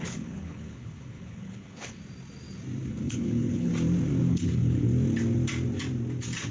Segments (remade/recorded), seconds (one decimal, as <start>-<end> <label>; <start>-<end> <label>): 0.0-2.0 remade; 2.0-2.9 recorded; 2.9-3.7 remade; 3.7-4.3 recorded; 4.3-4.9 remade; 4.9-6.5 recorded

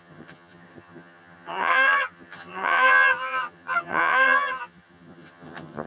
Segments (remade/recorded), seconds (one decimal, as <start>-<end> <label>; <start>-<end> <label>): 0.0-5.9 remade

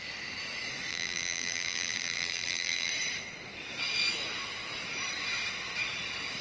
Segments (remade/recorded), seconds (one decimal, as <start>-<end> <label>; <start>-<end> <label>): 0.0-0.9 recorded; 0.9-2.9 remade; 2.9-6.4 recorded

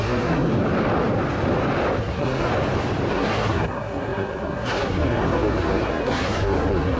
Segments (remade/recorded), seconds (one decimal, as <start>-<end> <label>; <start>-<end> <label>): 0.0-0.5 remade; 0.5-2.0 recorded; 2.0-2.5 remade; 2.5-3.1 recorded; 3.1-7.0 remade

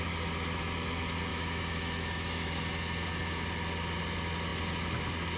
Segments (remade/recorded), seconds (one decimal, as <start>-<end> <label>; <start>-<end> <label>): 0.0-1.3 recorded; 1.3-2.6 remade; 2.6-5.4 recorded

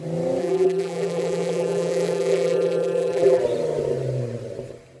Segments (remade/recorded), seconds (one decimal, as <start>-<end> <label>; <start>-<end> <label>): 0.0-0.4 recorded; 0.4-3.4 remade; 3.4-5.0 recorded

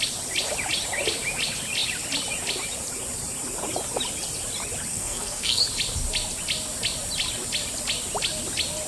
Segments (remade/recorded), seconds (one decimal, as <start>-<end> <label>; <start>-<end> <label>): 0.0-4.9 recorded; 4.9-5.6 remade; 5.6-8.9 recorded